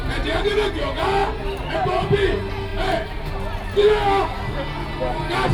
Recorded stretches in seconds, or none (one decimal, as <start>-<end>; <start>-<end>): 0.0-3.8; 4.3-5.5